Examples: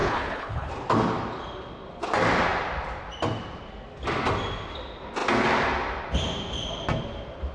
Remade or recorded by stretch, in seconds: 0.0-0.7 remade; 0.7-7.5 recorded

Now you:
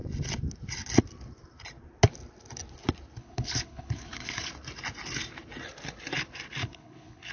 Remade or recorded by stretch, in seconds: 0.0-3.2 recorded; 3.2-4.5 remade; 4.5-6.6 recorded; 6.6-7.3 remade

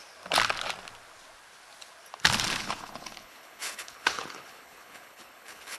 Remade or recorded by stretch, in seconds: 0.0-2.6 recorded; 2.6-5.8 remade